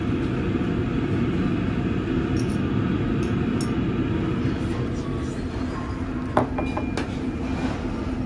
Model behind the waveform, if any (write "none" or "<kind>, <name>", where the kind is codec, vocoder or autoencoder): none